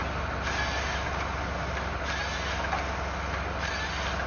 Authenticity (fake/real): real